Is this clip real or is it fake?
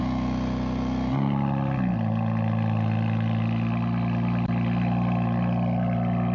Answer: real